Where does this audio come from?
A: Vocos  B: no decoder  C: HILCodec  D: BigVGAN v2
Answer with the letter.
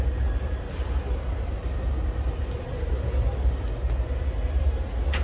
B